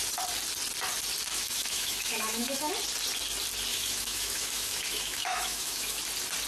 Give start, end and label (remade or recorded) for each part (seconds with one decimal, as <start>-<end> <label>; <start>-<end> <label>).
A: 0.0-1.3 recorded; 1.3-2.7 remade; 2.7-3.7 recorded; 3.7-6.0 remade; 6.0-6.5 recorded